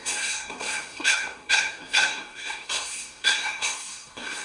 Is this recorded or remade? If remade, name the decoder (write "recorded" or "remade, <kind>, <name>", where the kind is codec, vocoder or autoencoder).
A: remade, codec, SNAC